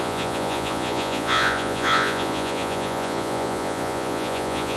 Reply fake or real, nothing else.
fake